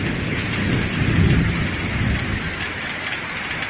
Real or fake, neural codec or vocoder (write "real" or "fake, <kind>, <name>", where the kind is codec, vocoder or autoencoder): real